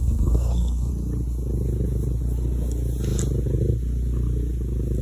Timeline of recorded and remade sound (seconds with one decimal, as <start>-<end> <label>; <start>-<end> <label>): 0.0-0.9 remade; 0.9-5.0 recorded